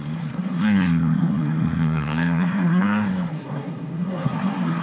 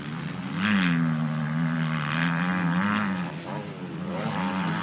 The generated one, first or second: first